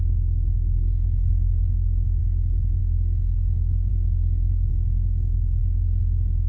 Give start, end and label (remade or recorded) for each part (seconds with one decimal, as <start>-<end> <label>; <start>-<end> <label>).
0.0-2.2 remade; 2.2-2.8 recorded; 2.8-6.5 remade